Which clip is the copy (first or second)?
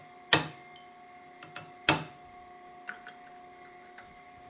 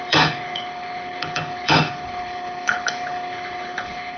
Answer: second